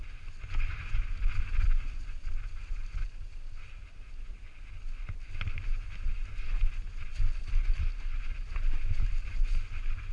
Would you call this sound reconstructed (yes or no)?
no